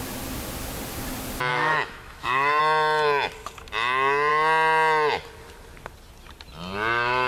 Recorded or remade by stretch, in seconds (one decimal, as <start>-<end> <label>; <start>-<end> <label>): 0.0-1.5 recorded; 1.5-2.6 remade; 2.6-7.3 recorded